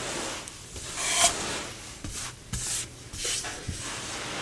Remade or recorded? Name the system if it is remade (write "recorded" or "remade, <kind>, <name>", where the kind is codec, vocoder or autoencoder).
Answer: recorded